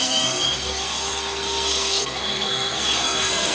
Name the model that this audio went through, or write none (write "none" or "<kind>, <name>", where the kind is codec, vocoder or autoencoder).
codec, SNAC